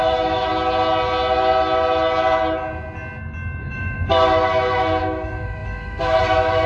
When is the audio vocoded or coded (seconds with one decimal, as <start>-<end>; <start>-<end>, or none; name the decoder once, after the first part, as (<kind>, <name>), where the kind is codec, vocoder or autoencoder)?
0.0-0.5 (autoencoder, DAC-VAE); 3.6-6.7